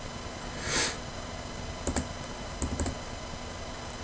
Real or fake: real